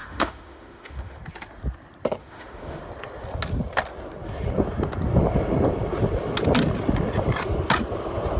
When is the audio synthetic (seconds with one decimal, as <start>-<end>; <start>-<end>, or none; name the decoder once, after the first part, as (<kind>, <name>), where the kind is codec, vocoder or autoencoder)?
0.0-1.2 (autoencoder, DAC-VAE); 2.2-2.8